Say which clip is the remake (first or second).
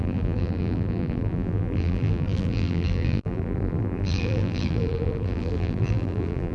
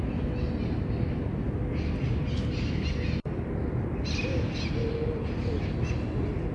first